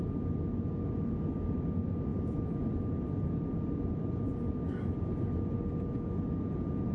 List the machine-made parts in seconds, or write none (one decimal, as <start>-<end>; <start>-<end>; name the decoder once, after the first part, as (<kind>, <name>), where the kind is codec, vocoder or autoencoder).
none